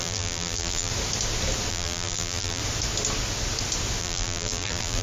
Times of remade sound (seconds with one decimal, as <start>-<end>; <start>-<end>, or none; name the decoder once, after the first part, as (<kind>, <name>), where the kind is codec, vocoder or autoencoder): 0.0-0.9 (vocoder, BigVGAN v2); 1.7-2.6; 4.0-5.0